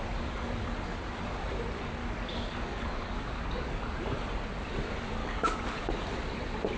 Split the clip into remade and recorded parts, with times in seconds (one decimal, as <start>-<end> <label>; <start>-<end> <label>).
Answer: 0.0-2.0 recorded; 2.0-3.9 remade; 3.9-5.2 recorded; 5.2-5.8 remade; 5.8-6.8 recorded